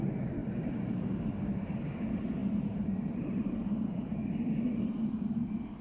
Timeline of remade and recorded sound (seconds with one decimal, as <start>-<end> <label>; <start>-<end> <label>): 0.0-0.4 recorded; 0.4-1.8 remade; 1.8-2.4 recorded; 2.4-4.3 remade; 4.3-5.8 recorded